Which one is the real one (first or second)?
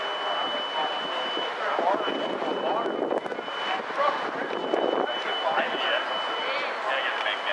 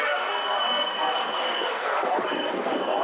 first